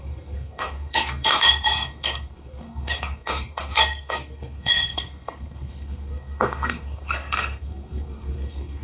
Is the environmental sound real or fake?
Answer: fake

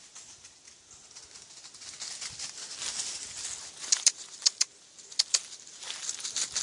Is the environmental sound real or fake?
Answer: real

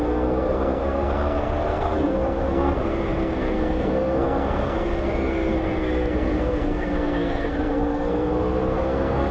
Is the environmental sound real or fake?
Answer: fake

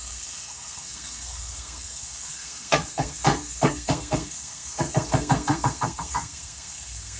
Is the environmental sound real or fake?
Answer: fake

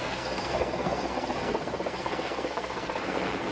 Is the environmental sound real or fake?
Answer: fake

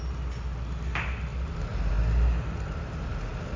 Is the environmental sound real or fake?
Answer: real